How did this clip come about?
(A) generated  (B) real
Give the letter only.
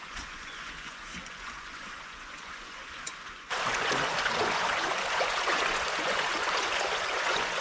A